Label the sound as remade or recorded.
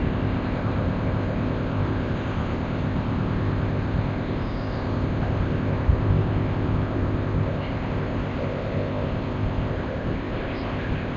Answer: remade